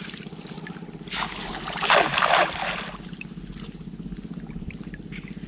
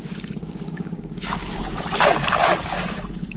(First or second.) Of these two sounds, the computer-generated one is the second